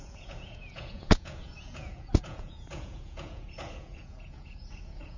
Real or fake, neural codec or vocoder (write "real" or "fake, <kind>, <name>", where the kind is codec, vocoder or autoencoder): fake, vocoder, Vocos